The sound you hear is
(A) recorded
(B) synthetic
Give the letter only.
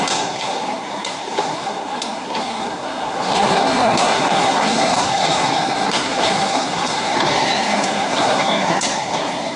B